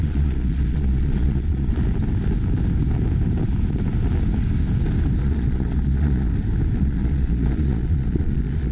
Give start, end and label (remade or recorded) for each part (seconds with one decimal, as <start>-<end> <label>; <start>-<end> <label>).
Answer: 0.0-1.7 remade; 1.7-5.2 recorded; 5.2-6.3 remade; 6.3-6.8 recorded; 6.8-8.7 remade

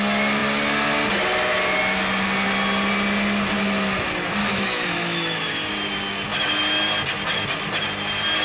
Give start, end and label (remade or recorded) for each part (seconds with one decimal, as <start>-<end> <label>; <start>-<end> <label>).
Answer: 0.0-4.4 recorded; 4.4-5.7 remade; 5.7-8.4 recorded

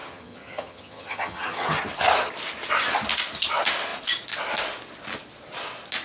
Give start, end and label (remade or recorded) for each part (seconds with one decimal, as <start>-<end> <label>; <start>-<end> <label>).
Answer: 0.0-1.8 remade; 1.8-6.0 recorded

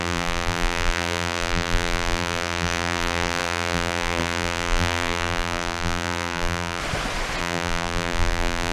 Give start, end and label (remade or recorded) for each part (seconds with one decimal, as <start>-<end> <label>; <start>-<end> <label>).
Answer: 0.0-6.8 remade; 6.8-7.4 recorded; 7.4-8.7 remade